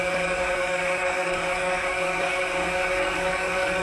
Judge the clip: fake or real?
fake